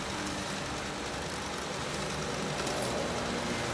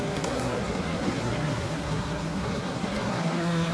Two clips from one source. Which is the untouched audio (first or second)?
first